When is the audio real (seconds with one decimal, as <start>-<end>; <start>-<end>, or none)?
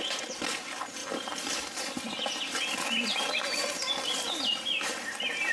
0.0-5.5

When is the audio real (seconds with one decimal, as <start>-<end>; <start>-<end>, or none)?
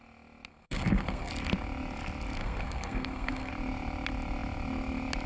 0.0-0.5; 1.3-2.4; 3.5-5.3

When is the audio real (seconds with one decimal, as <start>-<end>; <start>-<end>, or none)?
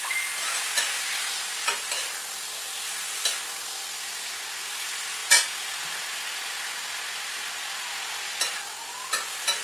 0.0-9.6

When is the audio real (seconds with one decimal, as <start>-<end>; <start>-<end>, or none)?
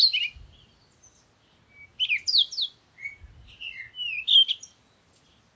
0.0-5.6